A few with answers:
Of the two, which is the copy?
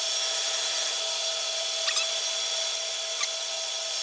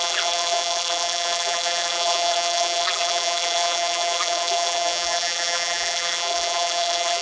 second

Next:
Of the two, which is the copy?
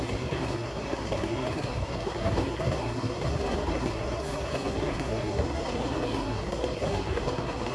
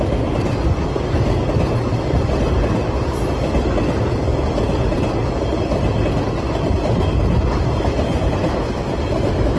first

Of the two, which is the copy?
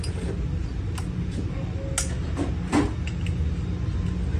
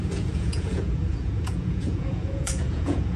second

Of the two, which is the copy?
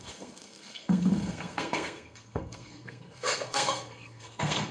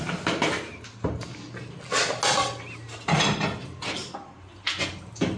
first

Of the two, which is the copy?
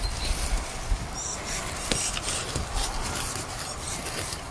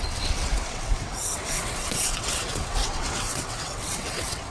second